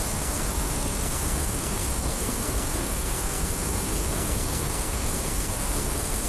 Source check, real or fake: fake